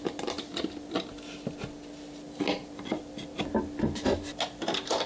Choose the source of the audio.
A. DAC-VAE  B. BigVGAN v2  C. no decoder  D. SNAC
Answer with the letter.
C